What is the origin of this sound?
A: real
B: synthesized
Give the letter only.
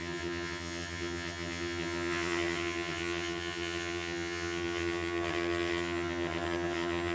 B